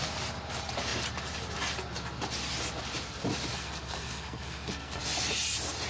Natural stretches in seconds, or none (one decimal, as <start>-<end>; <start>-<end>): 0.0-3.5; 5.0-5.9